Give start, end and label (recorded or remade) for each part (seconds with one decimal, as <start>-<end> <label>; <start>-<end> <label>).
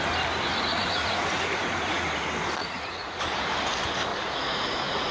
0.0-0.7 recorded; 0.7-2.1 remade; 2.1-2.6 recorded; 2.6-3.2 remade; 3.2-4.1 recorded; 4.1-5.1 remade